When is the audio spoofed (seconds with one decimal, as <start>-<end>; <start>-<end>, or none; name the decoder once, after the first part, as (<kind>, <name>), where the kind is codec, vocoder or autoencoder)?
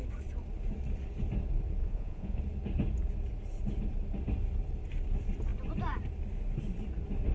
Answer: 1.8-2.4 (vocoder, Vocos)